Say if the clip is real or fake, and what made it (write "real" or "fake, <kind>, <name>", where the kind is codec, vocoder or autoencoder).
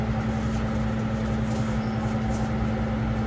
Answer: real